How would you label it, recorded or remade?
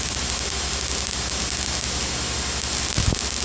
recorded